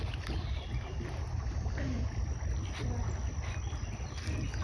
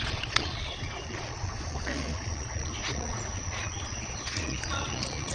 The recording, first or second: first